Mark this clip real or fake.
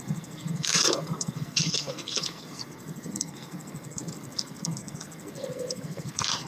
fake